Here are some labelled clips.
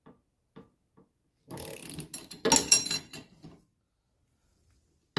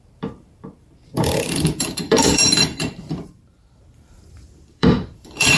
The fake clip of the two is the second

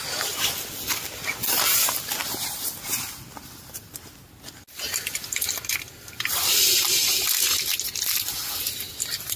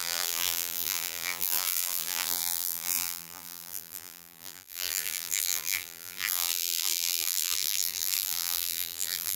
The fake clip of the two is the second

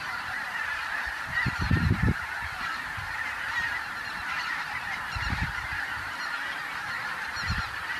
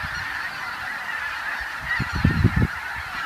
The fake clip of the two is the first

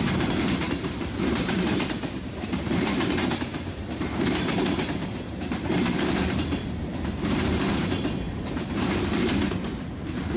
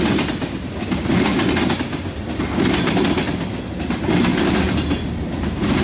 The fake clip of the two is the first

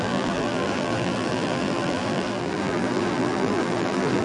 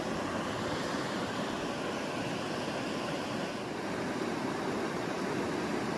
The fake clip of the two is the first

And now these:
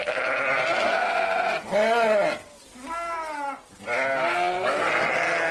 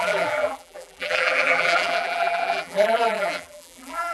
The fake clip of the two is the second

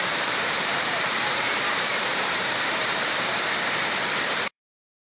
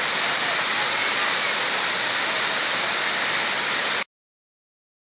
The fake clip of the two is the first